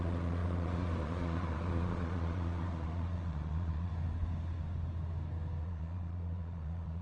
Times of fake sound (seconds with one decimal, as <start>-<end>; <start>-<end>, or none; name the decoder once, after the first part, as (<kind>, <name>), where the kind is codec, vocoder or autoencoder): 0.0-3.9 (vocoder, Vocos); 5.6-7.0